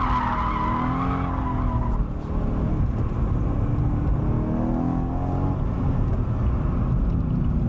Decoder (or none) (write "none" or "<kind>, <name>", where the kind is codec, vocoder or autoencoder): none